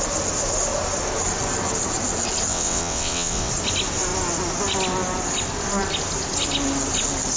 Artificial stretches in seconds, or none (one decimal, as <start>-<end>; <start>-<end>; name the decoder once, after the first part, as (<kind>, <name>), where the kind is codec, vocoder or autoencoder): 2.5-3.5 (vocoder, WaveNeXt)